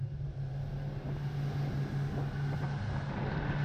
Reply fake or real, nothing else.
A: real